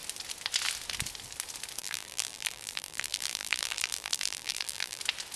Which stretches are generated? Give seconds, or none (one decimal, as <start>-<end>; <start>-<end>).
1.8-5.0